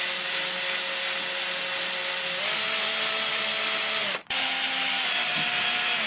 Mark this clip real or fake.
real